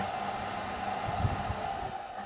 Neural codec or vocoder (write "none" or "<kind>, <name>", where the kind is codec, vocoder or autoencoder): none